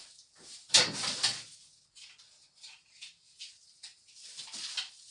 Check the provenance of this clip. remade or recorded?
recorded